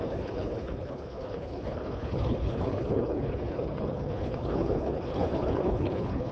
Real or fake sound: fake